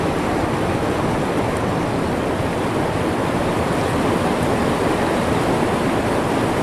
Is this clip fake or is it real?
real